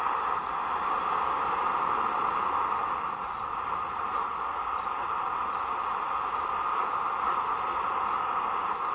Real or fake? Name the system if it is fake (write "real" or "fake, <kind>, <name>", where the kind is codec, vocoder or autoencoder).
real